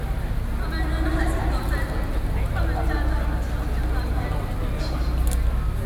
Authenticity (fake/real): real